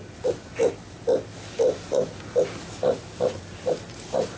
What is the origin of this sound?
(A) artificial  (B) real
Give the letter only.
B